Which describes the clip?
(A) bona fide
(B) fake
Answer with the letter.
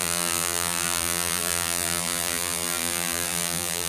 B